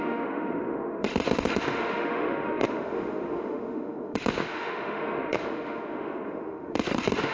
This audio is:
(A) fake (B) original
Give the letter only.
A